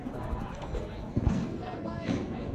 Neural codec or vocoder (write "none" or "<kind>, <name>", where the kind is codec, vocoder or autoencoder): codec, SNAC